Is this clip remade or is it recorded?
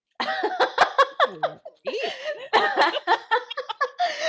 recorded